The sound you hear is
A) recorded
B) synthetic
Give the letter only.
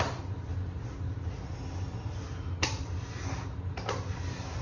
A